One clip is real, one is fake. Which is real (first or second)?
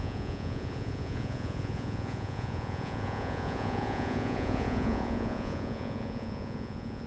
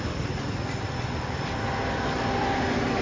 second